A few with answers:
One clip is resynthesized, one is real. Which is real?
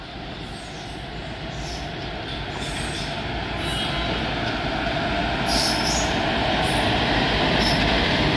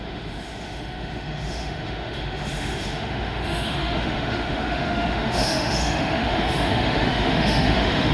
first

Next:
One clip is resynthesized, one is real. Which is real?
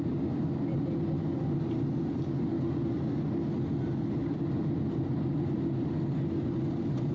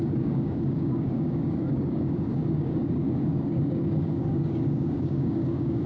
first